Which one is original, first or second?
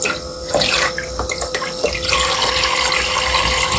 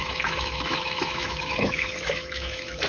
first